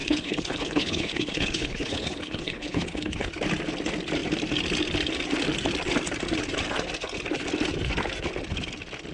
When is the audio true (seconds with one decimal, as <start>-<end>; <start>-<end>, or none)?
3.3-9.1